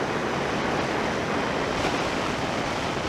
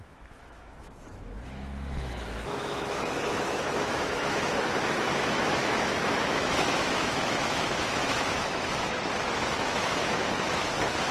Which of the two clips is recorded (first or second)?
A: first